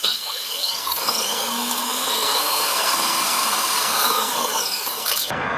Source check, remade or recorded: remade